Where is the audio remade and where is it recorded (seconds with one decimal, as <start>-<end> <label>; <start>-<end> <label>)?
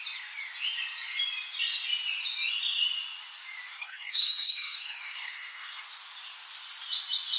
0.0-3.7 recorded; 3.7-5.8 remade; 5.8-7.4 recorded